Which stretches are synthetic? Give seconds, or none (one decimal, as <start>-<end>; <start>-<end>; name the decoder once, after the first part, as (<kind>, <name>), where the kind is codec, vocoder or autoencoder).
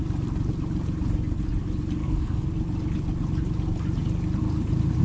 2.0-2.5 (codec, SNAC)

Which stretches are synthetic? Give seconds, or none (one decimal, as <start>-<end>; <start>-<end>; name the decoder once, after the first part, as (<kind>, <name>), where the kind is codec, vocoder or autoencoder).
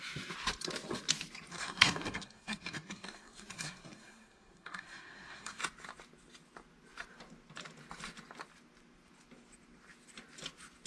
1.5-5.6 (codec, SNAC)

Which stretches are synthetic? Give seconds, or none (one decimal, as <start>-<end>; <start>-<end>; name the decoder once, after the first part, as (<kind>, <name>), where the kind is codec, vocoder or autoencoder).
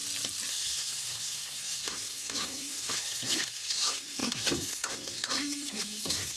0.5-6.4 (codec, SNAC)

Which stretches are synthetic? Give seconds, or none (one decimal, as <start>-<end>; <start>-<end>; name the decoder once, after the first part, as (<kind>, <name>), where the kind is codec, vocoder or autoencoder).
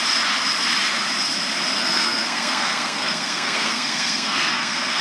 1.8-5.0 (codec, SNAC)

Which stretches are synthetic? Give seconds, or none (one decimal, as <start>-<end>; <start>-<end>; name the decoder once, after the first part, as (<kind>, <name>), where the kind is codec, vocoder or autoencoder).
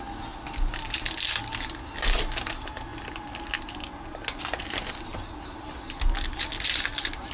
none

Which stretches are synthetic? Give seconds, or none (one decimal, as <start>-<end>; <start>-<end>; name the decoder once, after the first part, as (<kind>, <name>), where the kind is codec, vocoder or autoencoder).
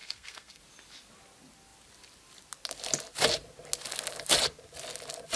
0.0-0.6 (codec, SNAC)